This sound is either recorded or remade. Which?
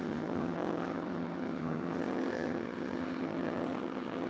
remade